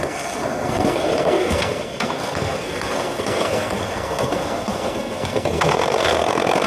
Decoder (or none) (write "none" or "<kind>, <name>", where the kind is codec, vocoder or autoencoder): codec, SNAC